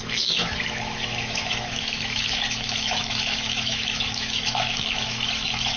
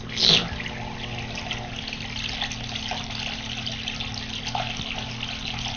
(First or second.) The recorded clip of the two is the second